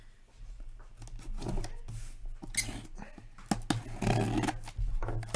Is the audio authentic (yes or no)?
yes